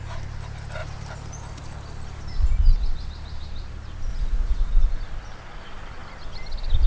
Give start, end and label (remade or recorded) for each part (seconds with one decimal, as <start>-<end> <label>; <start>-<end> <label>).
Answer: 0.0-4.1 recorded; 4.1-4.7 remade; 4.7-6.9 recorded